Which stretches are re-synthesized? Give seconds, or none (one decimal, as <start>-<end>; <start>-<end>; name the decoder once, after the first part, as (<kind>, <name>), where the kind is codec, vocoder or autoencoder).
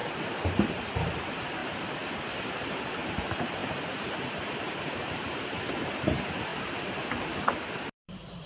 0.0-1.6 (vocoder, BigVGAN v2); 2.5-8.5